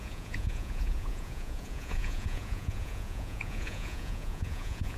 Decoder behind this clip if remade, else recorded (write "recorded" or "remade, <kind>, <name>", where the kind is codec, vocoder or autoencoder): remade, vocoder, Vocos